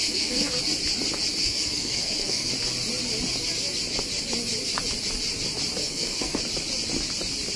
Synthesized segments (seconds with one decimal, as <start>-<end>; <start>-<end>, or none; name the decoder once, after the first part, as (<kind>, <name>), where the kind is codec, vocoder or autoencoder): 0.0-0.6 (codec, SNAC); 1.4-2.5; 5.8-6.4